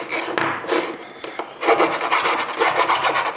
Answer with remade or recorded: recorded